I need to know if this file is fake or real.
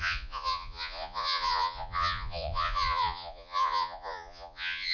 fake